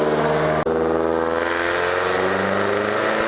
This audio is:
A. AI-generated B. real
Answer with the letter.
B